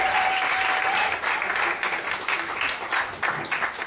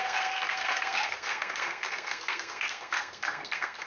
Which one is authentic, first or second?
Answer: first